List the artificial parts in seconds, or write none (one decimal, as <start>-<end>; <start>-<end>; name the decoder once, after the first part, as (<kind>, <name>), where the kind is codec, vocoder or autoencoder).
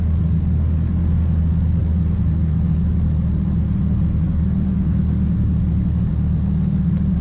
none